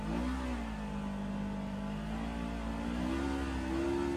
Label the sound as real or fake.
real